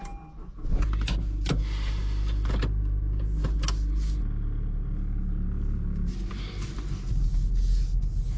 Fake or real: real